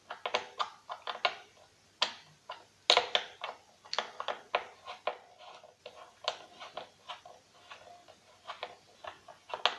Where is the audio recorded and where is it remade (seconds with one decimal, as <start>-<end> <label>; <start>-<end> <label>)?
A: 0.0-9.8 recorded